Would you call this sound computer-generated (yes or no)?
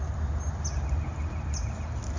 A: no